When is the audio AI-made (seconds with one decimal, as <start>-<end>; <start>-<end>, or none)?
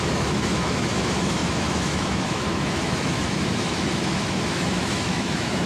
0.0-5.7